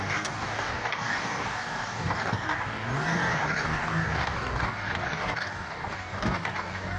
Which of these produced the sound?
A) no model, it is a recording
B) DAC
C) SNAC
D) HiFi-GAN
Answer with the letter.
B